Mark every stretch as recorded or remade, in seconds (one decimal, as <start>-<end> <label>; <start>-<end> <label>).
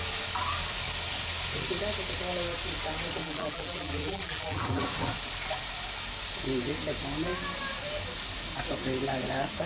0.0-3.2 recorded; 3.2-4.8 remade; 4.8-9.7 recorded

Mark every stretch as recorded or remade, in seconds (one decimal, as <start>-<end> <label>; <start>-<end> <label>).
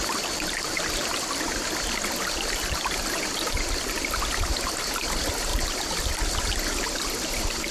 0.0-7.7 recorded